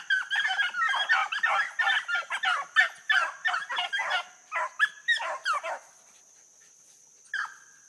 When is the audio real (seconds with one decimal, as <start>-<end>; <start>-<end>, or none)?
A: 0.0-7.9